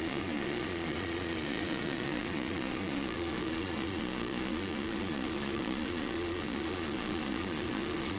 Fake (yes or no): yes